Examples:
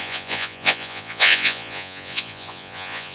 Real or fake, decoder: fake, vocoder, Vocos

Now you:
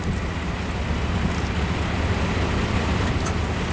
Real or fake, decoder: real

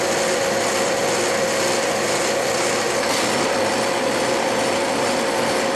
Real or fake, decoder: real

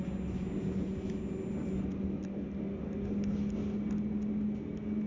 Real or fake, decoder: real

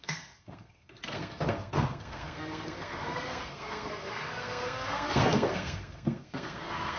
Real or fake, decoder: fake, codec, SNAC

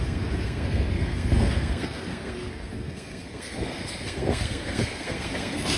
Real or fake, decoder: fake, codec, SNAC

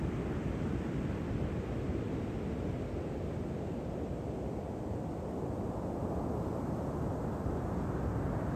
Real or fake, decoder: real